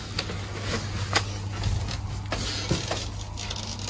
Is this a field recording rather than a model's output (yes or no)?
yes